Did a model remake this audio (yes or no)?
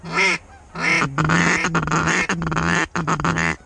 no